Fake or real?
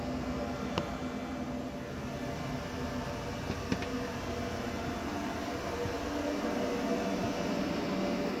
real